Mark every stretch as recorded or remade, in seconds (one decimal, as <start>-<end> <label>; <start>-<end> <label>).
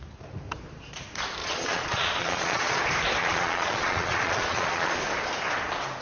0.0-1.4 recorded; 1.4-2.8 remade; 2.8-3.2 recorded; 3.2-5.0 remade; 5.0-6.0 recorded